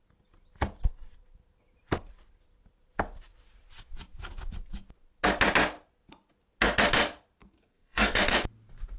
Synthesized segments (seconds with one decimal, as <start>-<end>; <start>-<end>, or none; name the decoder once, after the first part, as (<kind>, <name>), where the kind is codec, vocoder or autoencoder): 7.4-8.2 (codec, SNAC)